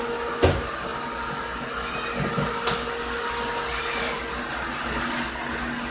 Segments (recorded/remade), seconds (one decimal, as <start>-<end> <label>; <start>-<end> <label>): 0.0-5.9 recorded